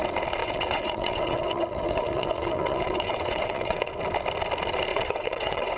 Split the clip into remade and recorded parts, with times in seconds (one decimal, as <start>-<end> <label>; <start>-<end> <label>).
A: 0.0-0.4 recorded; 0.4-3.9 remade; 3.9-4.9 recorded; 4.9-5.8 remade